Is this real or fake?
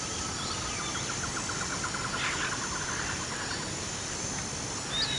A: real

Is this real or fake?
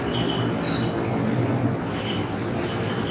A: real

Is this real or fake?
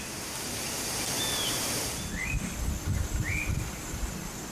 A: real